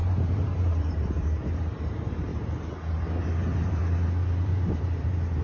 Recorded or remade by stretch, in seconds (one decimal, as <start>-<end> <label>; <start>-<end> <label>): 0.0-2.3 remade; 2.3-3.2 recorded; 3.2-3.8 remade; 3.8-4.4 recorded; 4.4-5.4 remade